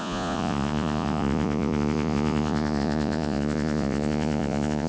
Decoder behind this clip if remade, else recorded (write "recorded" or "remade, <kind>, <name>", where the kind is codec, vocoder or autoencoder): remade, vocoder, Vocos